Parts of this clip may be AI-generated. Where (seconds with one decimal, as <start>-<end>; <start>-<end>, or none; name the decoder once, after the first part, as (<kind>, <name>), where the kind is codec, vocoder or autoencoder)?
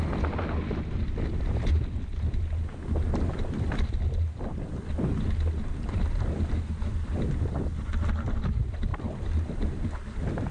none